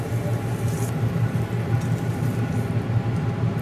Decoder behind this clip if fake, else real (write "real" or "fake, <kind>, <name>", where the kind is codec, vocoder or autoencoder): real